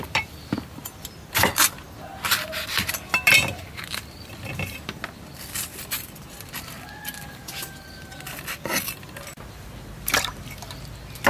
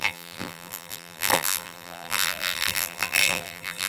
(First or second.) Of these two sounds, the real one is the first